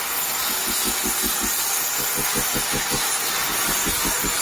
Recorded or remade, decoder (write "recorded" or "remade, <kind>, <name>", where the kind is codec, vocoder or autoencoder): recorded